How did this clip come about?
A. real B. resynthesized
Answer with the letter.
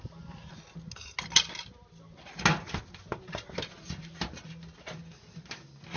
A